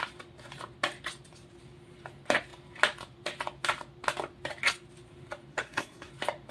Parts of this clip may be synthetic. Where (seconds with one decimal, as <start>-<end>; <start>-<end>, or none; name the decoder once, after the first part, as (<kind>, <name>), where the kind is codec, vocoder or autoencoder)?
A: 5.5-6.1 (codec, SNAC)